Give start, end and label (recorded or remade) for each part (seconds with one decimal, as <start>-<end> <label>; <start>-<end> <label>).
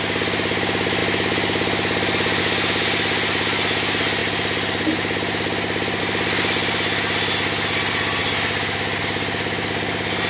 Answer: 0.0-10.3 recorded